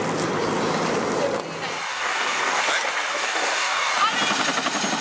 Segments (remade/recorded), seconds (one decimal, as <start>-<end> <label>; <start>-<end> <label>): 0.0-1.9 recorded; 1.9-2.6 remade; 2.6-3.1 recorded; 3.1-3.9 remade; 3.9-5.0 recorded